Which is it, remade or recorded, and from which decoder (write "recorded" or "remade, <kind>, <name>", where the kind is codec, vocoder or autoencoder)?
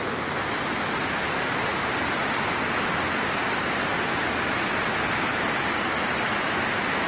recorded